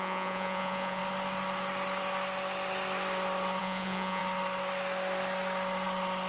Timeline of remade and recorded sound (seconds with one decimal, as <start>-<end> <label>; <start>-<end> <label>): 0.0-1.0 remade; 1.0-3.6 recorded; 3.6-4.2 remade; 4.2-6.3 recorded